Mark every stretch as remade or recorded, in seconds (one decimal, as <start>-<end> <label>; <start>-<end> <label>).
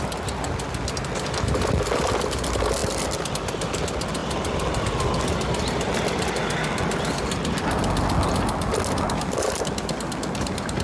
0.0-10.8 recorded